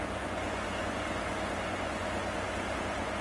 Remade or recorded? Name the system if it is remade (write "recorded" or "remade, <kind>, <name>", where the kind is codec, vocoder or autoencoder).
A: remade, vocoder, Vocos